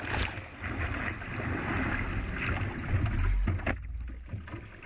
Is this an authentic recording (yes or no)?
yes